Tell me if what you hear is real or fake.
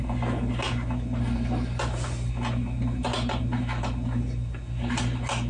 real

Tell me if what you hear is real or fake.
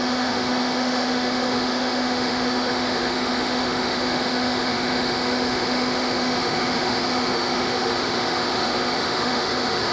fake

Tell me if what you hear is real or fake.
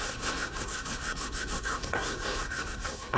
fake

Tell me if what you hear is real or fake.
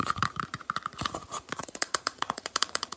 fake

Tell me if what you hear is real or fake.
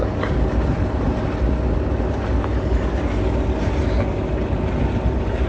real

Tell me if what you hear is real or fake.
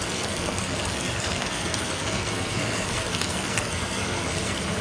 fake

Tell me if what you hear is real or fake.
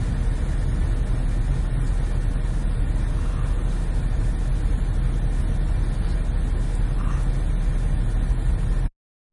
real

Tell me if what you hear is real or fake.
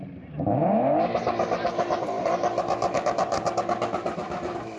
real